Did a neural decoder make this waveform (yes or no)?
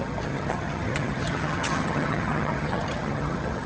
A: yes